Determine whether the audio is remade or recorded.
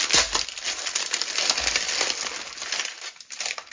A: recorded